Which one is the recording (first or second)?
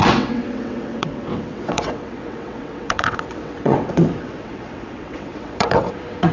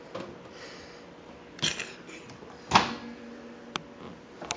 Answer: second